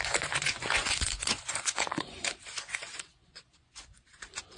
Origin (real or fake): fake